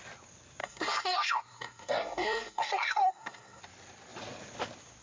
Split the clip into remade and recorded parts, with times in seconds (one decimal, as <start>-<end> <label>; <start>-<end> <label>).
0.0-0.6 recorded; 0.6-3.6 remade; 3.6-5.0 recorded